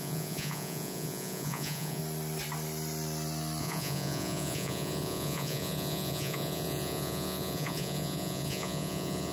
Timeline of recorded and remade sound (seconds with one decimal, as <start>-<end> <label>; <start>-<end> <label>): 0.0-2.0 remade; 2.0-3.6 recorded; 3.6-9.3 remade